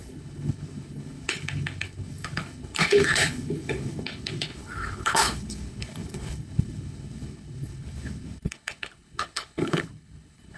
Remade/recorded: remade